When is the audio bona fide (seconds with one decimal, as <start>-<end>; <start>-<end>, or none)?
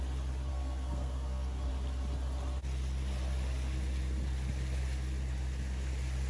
0.0-0.5; 1.7-6.3